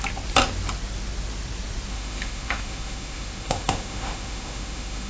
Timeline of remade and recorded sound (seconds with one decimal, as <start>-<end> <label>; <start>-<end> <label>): 0.0-1.9 recorded; 1.9-5.1 remade